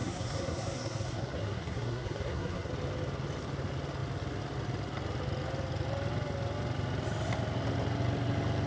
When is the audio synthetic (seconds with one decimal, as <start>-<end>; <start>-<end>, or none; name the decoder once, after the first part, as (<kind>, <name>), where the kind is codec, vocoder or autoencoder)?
0.0-2.7 (codec, SNAC)